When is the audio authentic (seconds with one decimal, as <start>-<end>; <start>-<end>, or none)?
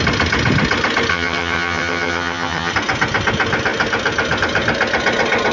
0.0-1.1; 2.7-5.5